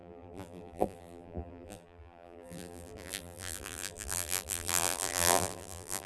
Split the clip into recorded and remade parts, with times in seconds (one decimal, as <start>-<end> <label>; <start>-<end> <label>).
0.0-6.1 remade